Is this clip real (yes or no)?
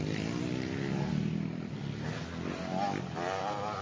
yes